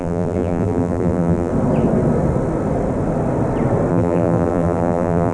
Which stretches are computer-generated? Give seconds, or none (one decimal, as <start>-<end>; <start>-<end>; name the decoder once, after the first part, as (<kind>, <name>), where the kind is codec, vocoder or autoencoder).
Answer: 0.0-1.5 (vocoder, BigVGAN v2); 3.9-5.3